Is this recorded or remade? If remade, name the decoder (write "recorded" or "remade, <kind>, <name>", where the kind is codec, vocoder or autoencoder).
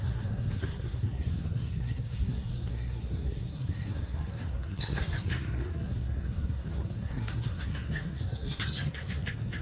remade, codec, SNAC